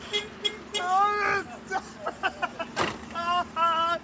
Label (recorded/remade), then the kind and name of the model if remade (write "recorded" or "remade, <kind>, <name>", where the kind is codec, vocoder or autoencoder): recorded